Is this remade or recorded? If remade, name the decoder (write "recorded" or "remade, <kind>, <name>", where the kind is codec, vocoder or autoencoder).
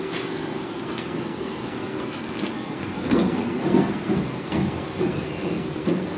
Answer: remade, codec, SNAC